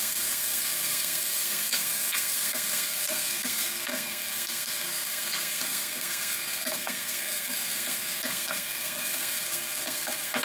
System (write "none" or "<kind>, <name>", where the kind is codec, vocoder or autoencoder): codec, SNAC